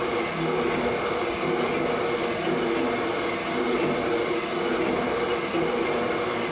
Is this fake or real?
real